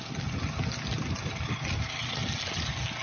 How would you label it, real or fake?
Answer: real